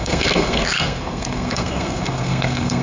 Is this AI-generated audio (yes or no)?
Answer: yes